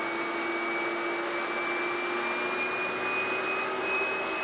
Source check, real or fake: real